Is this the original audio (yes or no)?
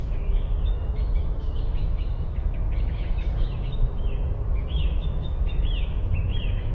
no